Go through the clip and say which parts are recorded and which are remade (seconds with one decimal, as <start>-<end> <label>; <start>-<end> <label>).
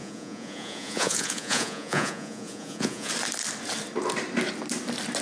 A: 0.0-3.1 remade; 3.1-5.2 recorded